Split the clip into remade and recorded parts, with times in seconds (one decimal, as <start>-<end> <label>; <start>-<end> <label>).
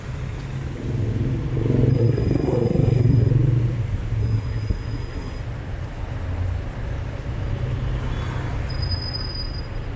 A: 0.0-1.9 recorded; 1.9-3.3 remade; 3.3-4.2 recorded; 4.2-5.4 remade; 5.4-10.0 recorded